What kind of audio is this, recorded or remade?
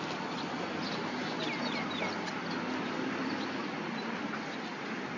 recorded